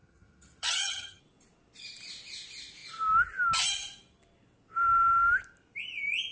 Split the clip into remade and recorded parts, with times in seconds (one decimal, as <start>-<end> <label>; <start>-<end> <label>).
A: 0.0-1.2 remade; 1.2-6.3 recorded